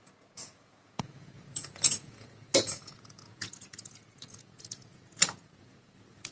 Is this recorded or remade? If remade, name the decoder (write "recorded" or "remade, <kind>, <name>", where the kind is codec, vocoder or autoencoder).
remade, vocoder, Vocos